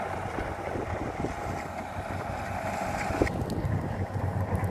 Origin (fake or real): real